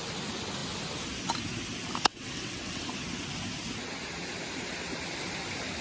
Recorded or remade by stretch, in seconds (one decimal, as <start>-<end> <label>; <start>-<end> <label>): 0.0-2.1 recorded; 2.1-2.8 remade; 2.8-5.8 recorded